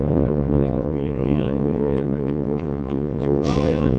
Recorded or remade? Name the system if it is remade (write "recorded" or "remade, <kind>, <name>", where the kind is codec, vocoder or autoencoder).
remade, vocoder, WaveNeXt